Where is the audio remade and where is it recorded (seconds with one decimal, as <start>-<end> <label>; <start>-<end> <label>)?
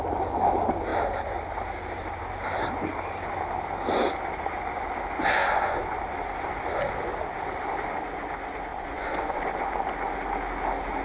0.0-5.4 recorded; 5.4-6.0 remade; 6.0-8.7 recorded; 8.7-9.4 remade; 9.4-11.0 recorded